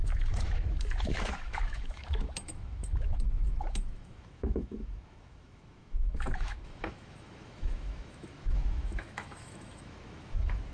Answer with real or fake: fake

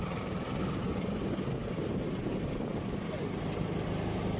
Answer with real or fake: real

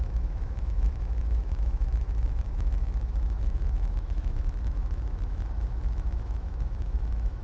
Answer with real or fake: fake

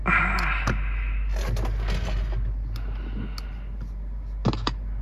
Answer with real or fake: real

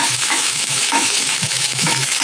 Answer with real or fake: fake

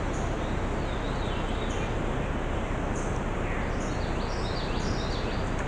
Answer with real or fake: real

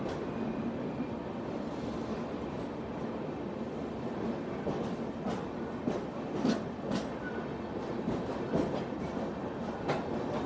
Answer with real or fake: real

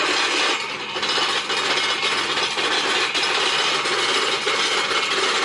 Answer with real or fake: real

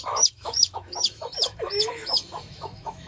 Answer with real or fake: fake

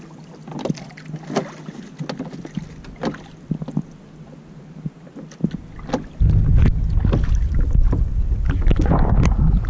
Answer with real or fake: real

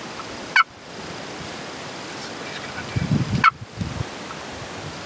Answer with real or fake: real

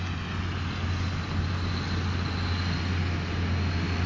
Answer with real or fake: real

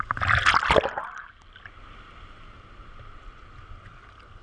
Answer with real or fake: real